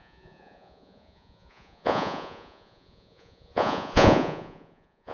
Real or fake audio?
fake